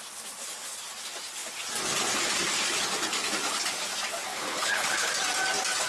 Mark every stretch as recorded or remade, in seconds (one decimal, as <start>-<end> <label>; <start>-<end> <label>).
0.0-4.3 recorded; 4.3-5.1 remade; 5.1-5.9 recorded